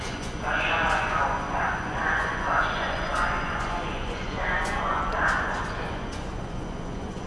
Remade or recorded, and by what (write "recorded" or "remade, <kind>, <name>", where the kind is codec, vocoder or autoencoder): remade, vocoder, Vocos